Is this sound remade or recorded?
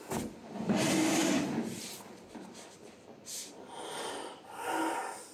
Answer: recorded